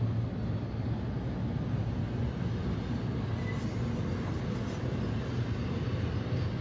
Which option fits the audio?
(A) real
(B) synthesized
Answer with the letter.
A